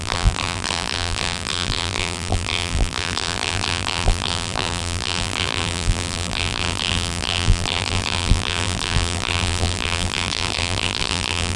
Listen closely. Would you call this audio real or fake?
fake